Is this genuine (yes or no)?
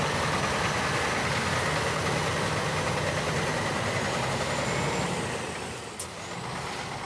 yes